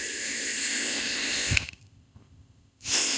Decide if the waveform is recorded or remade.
remade